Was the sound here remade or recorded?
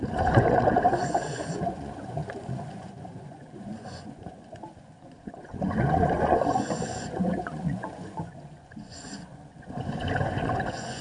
remade